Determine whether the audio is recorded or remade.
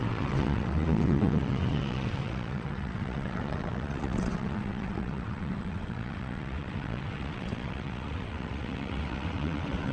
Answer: remade